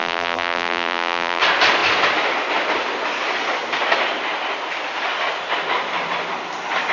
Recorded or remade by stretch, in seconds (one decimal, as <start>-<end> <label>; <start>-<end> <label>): 0.0-1.4 remade; 1.4-6.9 recorded